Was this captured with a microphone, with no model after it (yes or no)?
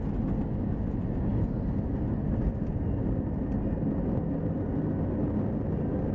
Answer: yes